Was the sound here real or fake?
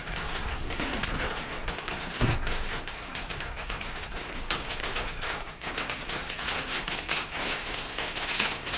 fake